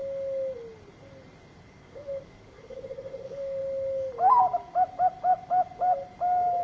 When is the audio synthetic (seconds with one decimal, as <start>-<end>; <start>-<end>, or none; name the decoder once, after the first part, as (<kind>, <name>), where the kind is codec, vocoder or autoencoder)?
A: 1.7-3.6 (codec, DAC)